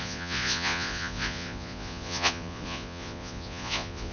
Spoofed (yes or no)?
yes